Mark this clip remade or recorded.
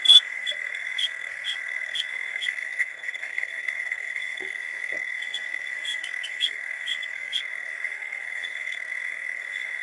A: remade